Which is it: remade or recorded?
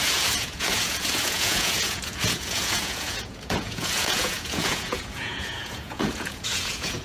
remade